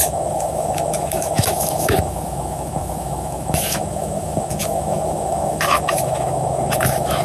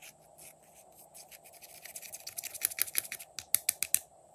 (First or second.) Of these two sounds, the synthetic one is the first